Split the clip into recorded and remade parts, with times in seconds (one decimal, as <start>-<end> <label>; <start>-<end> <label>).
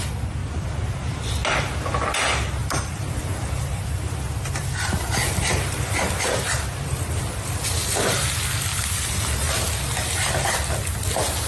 0.0-0.4 recorded; 0.4-1.4 remade; 1.4-2.6 recorded; 2.6-7.0 remade; 7.0-8.7 recorded; 8.7-9.8 remade; 9.8-11.5 recorded